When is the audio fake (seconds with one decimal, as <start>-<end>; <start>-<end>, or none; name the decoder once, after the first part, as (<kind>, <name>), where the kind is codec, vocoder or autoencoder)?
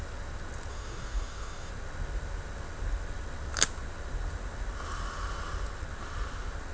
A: 0.7-1.7 (codec, DAC)